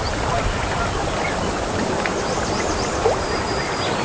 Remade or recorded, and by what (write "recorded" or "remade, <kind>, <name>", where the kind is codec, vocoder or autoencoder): recorded